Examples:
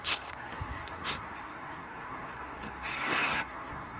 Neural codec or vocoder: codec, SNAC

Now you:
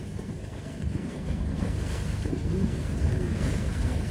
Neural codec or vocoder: codec, SNAC